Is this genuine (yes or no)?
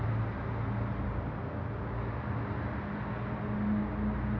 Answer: yes